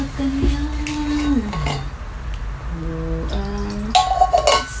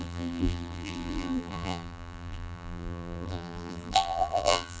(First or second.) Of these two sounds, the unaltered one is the first